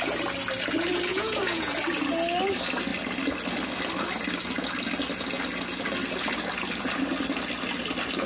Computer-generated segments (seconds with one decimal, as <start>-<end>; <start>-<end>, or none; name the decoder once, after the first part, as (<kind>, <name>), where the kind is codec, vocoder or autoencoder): 1.1-1.7 (vocoder, Vocos)